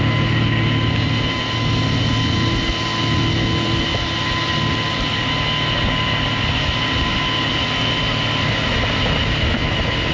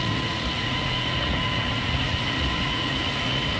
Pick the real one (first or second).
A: first